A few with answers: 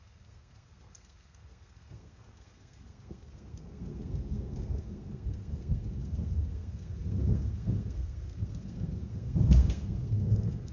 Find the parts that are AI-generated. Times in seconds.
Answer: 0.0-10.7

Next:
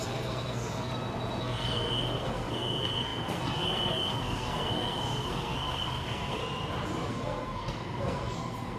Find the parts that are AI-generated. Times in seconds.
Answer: 0.0-0.9; 1.4-6.4; 7.1-8.8

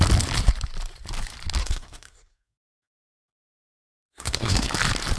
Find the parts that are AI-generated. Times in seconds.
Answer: 1.6-4.7

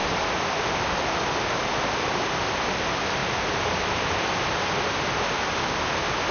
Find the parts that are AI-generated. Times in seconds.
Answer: none

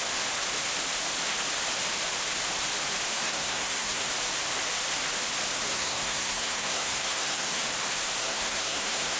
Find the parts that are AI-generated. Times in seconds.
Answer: 3.2-4.1; 5.7-7.6; 8.2-9.2

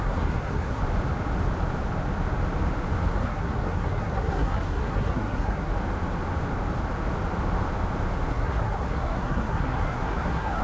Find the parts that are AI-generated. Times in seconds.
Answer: 0.0-0.8; 3.1-5.7; 8.3-10.6

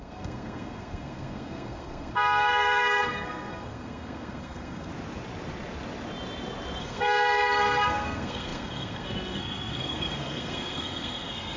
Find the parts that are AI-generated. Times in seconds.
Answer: 0.0-4.9; 6.8-11.6

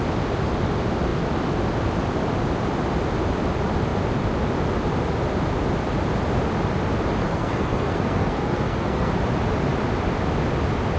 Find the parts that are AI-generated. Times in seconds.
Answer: 7.2-9.1